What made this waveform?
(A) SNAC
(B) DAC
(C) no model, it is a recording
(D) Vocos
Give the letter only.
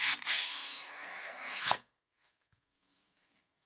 A